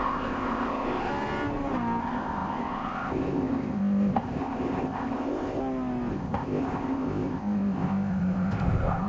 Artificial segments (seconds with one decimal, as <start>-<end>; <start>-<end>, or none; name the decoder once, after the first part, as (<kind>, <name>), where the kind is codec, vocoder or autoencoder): 0.0-1.1 (codec, ZipCodec); 2.0-5.6; 6.1-9.1